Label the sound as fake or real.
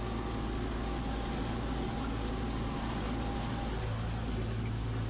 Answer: real